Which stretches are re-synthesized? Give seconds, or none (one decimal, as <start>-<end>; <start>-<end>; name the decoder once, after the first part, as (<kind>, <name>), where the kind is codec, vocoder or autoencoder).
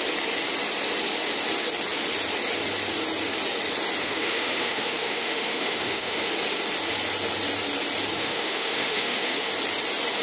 4.0-6.3 (autoencoder, DAC-VAE); 8.1-9.5